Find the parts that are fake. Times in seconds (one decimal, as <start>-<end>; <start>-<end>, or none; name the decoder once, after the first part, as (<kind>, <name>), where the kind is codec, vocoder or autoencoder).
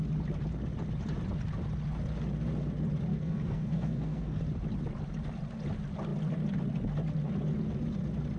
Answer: 3.1-4.4 (codec, SNAC)